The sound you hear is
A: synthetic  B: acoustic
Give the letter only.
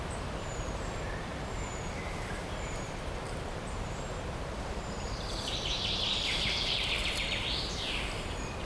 A